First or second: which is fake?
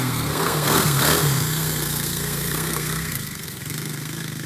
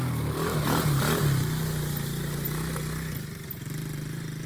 first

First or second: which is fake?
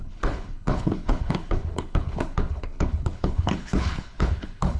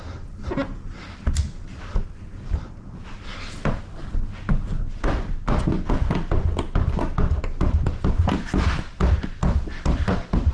first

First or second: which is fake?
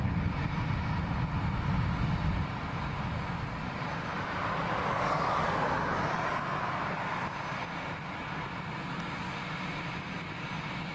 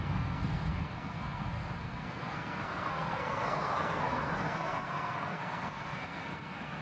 second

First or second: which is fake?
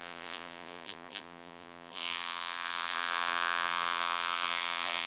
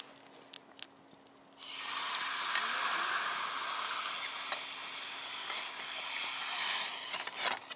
first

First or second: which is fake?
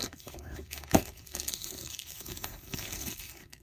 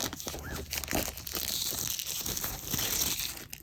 first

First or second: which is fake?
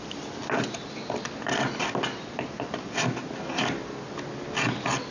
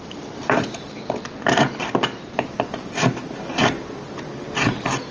second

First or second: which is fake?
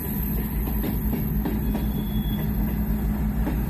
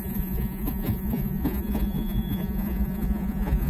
second